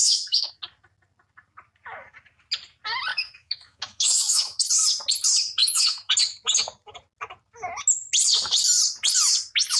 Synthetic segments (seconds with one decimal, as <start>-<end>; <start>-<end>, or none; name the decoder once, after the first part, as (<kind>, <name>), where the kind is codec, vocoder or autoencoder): 0.0-0.5 (autoencoder, DAC-VAE); 3.1-4.7; 5.6-6.1